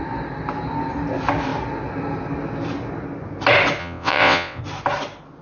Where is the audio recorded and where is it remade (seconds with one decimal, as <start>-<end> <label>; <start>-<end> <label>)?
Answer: 0.0-3.8 recorded; 3.8-4.6 remade; 4.6-5.4 recorded